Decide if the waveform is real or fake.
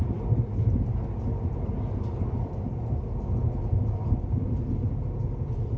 real